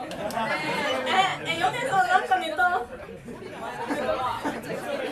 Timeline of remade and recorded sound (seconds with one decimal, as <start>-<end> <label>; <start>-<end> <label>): 0.0-5.1 recorded